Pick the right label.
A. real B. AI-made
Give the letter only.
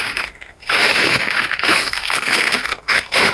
B